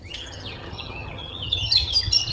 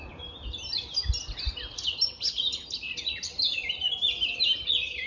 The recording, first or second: second